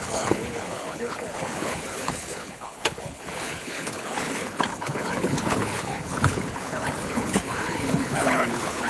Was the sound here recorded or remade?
remade